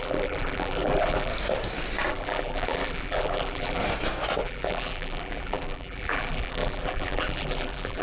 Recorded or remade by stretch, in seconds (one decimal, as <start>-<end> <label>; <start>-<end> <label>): 0.0-1.3 remade; 1.3-2.1 recorded; 2.1-3.8 remade; 3.8-4.4 recorded; 4.4-8.0 remade